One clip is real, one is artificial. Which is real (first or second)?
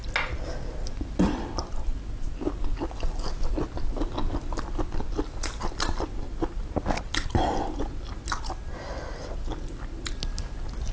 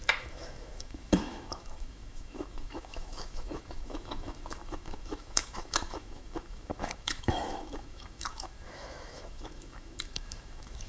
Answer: first